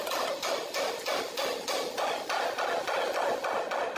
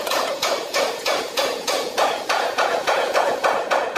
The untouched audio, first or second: first